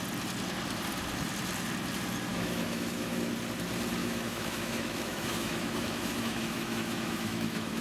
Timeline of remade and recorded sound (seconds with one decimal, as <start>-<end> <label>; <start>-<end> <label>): 0.0-2.3 recorded; 2.3-3.3 remade; 3.3-4.0 recorded; 4.0-7.8 remade